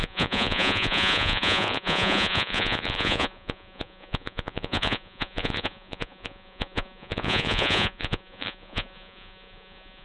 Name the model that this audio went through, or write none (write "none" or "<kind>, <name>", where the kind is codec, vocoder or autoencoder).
vocoder, Vocos